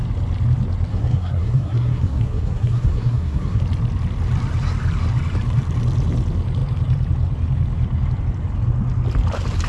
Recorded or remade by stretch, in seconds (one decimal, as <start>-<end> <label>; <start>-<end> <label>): 0.0-0.9 recorded; 0.9-3.6 remade; 3.6-9.7 recorded